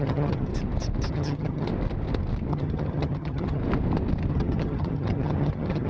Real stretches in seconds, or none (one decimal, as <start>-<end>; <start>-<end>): 0.5-1.1; 1.7-2.5; 3.6-4.3